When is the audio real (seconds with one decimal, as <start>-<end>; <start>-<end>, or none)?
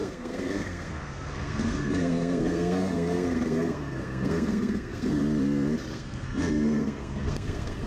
5.2-5.9